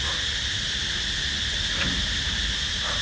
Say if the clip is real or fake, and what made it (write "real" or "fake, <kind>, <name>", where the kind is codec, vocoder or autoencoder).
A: real